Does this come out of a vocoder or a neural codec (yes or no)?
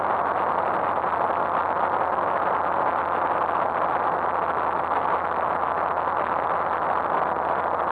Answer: no